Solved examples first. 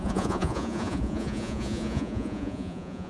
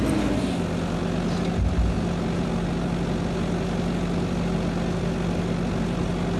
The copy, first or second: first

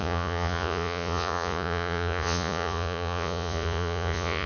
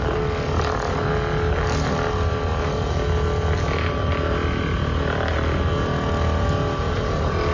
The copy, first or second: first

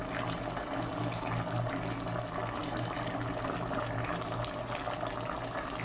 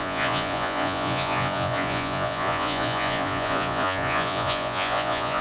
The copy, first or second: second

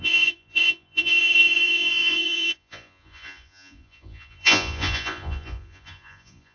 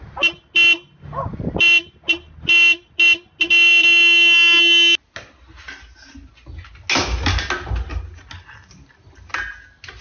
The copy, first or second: first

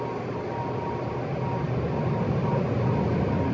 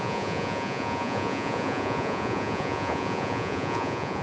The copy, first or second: second